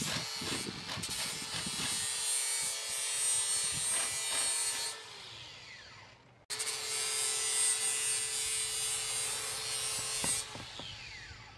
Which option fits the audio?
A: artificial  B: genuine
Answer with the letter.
B